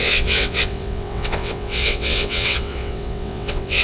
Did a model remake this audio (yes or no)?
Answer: yes